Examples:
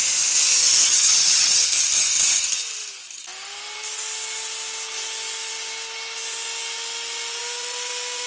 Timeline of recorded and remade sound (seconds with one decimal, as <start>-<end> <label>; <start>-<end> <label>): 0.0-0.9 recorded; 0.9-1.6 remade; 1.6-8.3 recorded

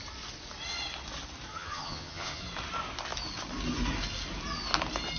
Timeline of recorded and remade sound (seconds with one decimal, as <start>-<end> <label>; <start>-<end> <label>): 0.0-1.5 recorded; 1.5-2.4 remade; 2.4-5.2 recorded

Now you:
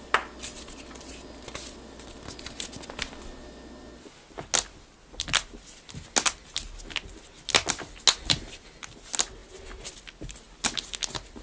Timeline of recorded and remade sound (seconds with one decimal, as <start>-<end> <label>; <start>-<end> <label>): 0.0-11.4 recorded